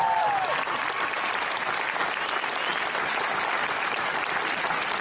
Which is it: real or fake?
real